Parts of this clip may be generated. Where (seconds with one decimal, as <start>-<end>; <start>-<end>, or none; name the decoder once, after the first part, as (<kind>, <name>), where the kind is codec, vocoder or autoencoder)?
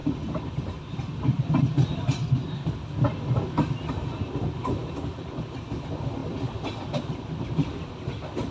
0.0-3.9 (vocoder, BigVGAN v2); 4.8-5.5